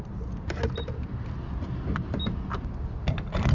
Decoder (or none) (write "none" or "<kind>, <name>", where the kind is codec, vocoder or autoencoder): none